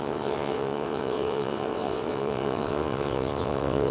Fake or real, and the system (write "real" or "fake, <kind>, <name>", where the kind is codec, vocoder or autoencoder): fake, vocoder, WaveNeXt